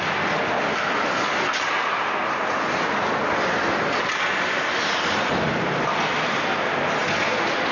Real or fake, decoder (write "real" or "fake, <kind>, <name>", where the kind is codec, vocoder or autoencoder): real